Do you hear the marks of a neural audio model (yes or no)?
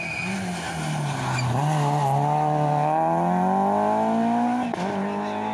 no